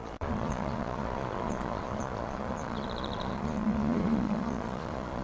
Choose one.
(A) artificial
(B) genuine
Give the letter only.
A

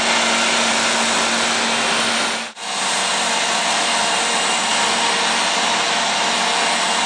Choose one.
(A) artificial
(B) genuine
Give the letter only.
B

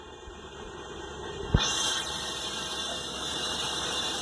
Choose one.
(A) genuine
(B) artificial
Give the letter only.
B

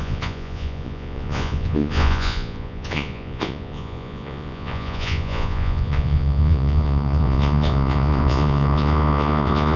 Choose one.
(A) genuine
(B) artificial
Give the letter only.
B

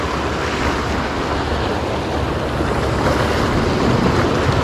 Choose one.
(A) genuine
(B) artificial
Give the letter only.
A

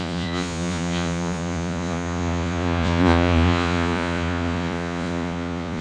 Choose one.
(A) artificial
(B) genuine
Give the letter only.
A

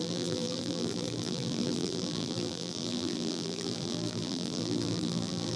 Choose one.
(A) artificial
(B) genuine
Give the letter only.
A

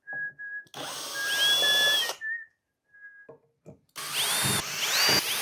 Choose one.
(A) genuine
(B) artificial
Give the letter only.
A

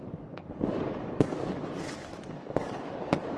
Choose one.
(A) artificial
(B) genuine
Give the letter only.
A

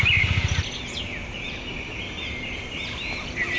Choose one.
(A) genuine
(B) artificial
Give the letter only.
A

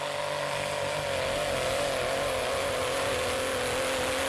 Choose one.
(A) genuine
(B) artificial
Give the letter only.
A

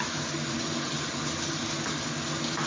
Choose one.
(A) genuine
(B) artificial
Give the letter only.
A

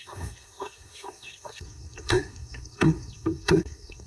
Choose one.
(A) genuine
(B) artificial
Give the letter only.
B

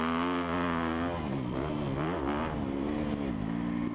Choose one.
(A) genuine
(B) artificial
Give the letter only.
A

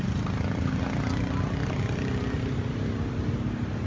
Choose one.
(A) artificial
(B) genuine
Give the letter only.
B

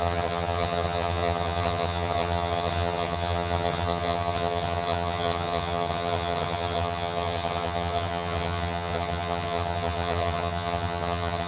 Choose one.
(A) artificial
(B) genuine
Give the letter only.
A